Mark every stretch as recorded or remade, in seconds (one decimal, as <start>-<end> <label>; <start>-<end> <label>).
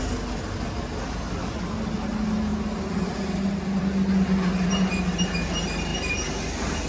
0.0-6.9 recorded